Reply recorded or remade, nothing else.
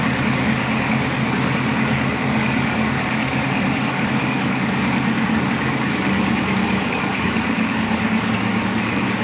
remade